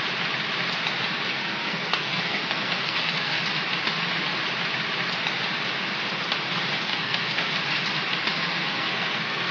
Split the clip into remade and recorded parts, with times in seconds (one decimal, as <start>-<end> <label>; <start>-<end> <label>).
0.0-1.3 recorded; 1.3-3.4 remade; 3.4-6.9 recorded; 6.9-7.5 remade; 7.5-8.3 recorded; 8.3-9.5 remade